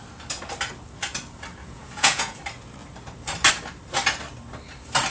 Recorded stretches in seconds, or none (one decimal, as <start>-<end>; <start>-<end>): 0.0-1.6; 2.4-5.1